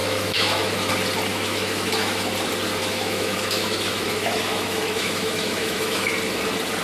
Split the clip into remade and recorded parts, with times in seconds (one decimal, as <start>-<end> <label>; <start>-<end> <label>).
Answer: 0.0-0.9 remade; 0.9-1.3 recorded; 1.3-2.2 remade; 2.2-2.8 recorded; 2.8-6.1 remade; 6.1-6.8 recorded